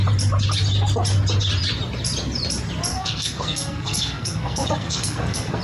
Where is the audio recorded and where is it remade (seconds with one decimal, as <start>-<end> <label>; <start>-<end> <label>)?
0.0-2.9 recorded; 2.9-5.6 remade